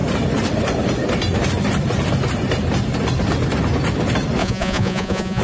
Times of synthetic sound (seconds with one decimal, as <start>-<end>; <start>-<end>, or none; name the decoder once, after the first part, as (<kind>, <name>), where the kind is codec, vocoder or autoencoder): 4.4-5.4 (vocoder, Vocos)